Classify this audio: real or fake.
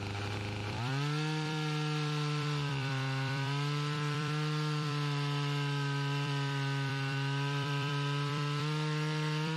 fake